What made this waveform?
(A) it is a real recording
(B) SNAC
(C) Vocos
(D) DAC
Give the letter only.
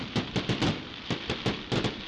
A